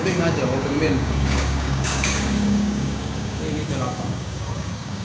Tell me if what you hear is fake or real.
fake